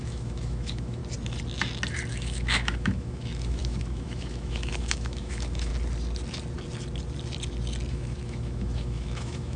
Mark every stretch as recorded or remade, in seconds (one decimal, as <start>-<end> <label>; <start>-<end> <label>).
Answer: 0.0-1.0 remade; 1.0-2.1 recorded; 2.1-5.7 remade; 5.7-7.9 recorded; 7.9-9.6 remade